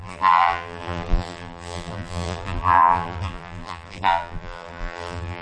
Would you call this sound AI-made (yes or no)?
yes